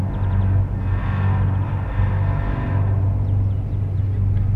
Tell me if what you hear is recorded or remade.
recorded